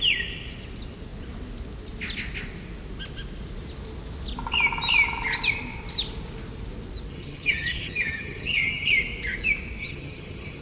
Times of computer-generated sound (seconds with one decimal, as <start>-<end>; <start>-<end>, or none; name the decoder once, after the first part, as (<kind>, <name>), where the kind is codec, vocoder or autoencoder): 7.1-8.9 (vocoder, HiFi-GAN); 9.8-10.6